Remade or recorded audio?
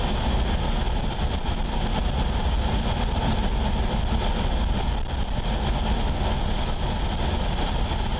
recorded